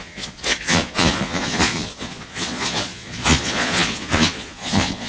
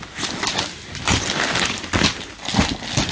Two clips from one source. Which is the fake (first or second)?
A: first